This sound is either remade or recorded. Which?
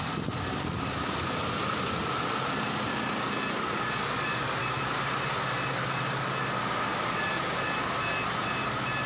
recorded